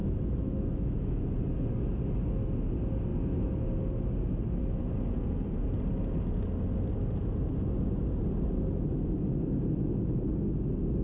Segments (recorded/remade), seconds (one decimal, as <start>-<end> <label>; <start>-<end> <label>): 0.0-1.3 remade; 1.3-11.0 recorded